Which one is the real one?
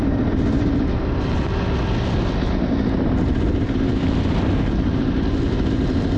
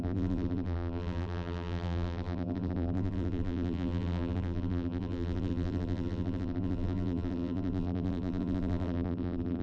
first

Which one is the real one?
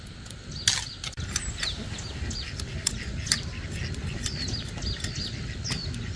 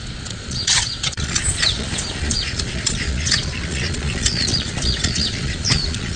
first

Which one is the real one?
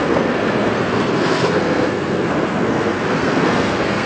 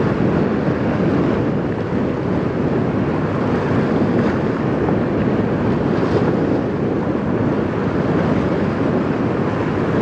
second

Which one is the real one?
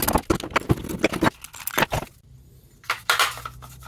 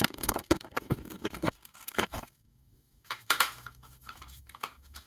first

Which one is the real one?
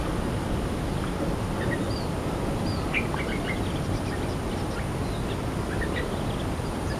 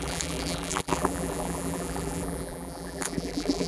first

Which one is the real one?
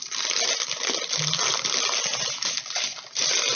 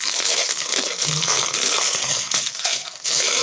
first